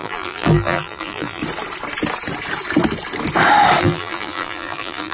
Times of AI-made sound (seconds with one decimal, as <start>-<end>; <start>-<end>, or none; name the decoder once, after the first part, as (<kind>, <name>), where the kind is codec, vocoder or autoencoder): 0.0-1.4 (vocoder, BigVGAN v2); 3.8-5.1

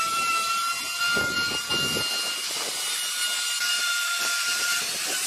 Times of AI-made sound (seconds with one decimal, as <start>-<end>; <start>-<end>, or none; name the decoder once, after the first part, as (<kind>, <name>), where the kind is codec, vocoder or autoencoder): 0.0-0.6 (vocoder, BigVGAN v2); 3.8-5.3

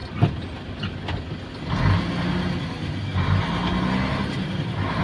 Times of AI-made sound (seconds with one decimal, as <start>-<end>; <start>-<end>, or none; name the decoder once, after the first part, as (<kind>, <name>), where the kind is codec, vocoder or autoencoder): none

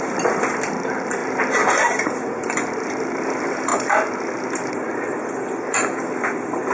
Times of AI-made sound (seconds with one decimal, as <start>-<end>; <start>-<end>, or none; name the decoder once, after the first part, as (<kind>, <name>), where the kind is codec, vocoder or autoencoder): 0.0-1.2 (vocoder, BigVGAN v2); 1.7-6.7

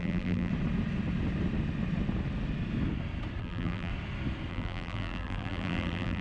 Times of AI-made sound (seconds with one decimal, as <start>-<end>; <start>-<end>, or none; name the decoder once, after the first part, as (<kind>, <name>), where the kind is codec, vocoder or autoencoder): 0.0-0.5 (vocoder, BigVGAN v2); 3.4-3.9; 4.5-6.2